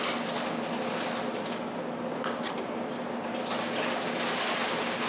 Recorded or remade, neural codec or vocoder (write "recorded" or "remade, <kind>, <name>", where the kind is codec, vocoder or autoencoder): recorded